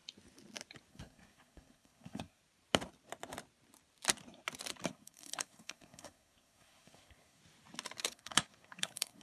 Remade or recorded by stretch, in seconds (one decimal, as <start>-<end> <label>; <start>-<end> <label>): 0.0-0.9 recorded; 0.9-2.4 remade; 2.4-4.9 recorded; 4.9-7.4 remade; 7.4-8.0 recorded; 8.0-9.2 remade